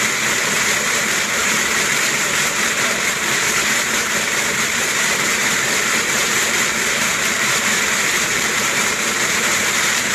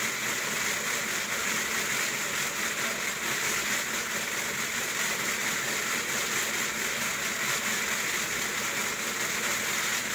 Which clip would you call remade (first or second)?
first